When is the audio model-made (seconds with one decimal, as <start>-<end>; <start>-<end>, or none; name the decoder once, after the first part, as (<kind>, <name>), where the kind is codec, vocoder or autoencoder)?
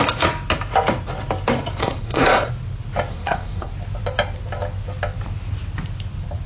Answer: 1.8-2.5 (codec, SNAC); 3.1-3.7